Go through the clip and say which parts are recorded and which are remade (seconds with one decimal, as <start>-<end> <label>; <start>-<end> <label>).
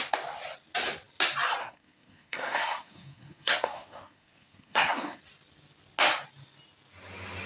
0.0-1.6 recorded; 1.6-5.2 remade; 5.2-7.5 recorded